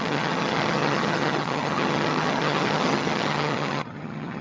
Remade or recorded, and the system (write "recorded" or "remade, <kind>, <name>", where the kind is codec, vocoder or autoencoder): remade, vocoder, HiFi-GAN